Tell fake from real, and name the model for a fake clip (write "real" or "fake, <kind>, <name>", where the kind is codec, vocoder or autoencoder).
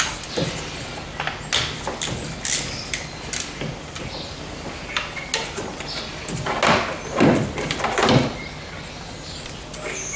real